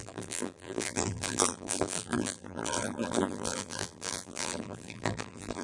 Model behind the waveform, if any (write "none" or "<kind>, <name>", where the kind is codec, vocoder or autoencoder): vocoder, BigVGAN v2